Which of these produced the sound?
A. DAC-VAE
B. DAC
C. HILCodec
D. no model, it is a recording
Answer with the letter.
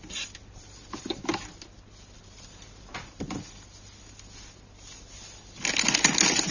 D